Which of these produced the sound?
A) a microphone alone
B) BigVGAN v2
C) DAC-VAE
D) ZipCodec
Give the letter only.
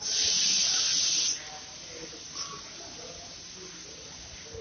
A